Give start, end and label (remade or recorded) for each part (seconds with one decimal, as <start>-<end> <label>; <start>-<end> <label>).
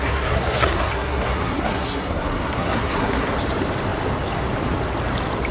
0.0-3.3 remade; 3.3-5.5 recorded